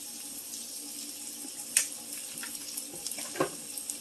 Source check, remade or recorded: remade